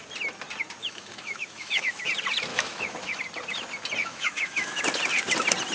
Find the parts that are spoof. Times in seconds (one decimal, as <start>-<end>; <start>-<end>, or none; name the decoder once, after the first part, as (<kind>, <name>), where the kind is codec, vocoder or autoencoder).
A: 0.8-2.1 (autoencoder, DAC-VAE); 2.5-3.2; 4.0-4.8